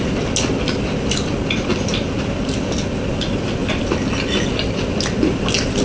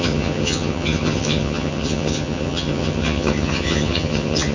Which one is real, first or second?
first